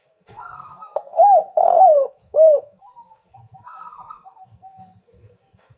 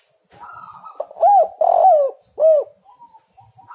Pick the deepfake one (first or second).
first